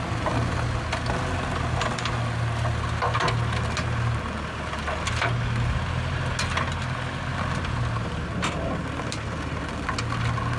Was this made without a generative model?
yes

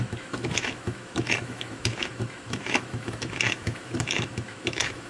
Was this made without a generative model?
no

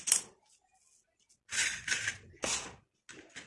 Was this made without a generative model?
yes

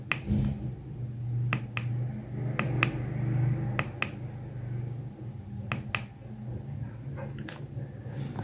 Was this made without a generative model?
yes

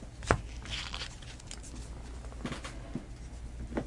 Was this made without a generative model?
yes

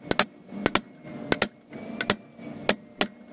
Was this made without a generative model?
yes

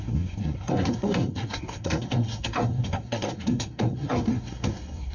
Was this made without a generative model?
no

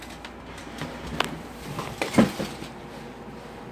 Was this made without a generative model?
yes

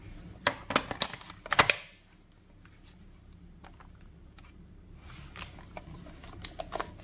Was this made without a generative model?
yes